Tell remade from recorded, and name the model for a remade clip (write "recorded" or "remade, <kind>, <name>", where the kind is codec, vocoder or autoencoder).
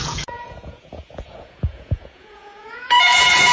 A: remade, vocoder, Vocos